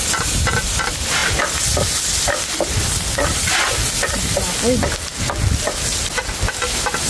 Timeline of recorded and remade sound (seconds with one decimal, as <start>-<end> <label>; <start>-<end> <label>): 0.0-7.1 recorded